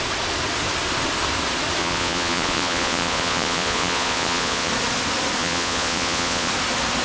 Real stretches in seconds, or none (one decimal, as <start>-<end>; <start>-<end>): 0.0-1.8; 4.7-5.4; 6.5-7.0

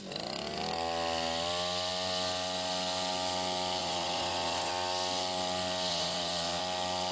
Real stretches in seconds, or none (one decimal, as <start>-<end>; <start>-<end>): 0.0-3.8; 4.7-5.9; 6.6-7.1

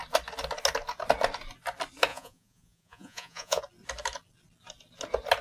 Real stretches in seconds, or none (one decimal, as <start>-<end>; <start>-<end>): 0.0-2.1; 3.6-5.4